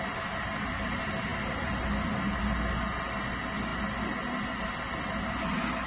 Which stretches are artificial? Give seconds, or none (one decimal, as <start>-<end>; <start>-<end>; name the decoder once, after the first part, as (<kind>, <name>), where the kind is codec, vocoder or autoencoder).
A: none